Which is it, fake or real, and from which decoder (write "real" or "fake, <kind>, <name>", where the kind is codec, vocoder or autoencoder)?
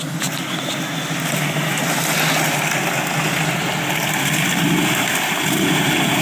real